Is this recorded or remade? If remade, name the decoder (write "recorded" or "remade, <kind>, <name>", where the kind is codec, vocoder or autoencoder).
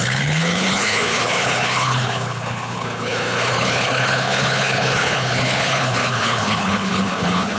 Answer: remade, codec, HILCodec